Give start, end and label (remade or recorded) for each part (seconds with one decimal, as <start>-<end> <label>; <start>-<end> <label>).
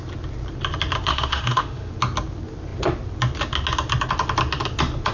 0.0-1.1 recorded; 1.1-1.9 remade; 1.9-5.1 recorded